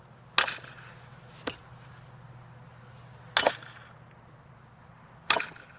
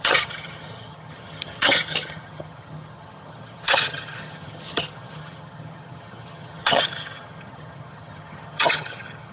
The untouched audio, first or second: first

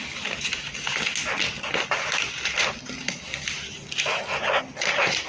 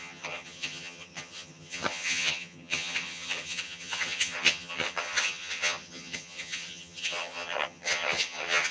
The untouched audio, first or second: first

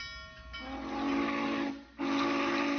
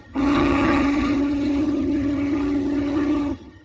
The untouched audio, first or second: first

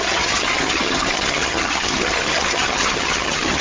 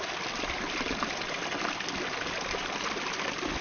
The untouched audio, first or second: second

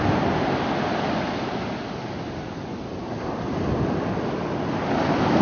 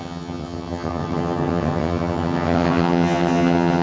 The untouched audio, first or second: first